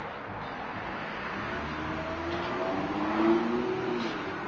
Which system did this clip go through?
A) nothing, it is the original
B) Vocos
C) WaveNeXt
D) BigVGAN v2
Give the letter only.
A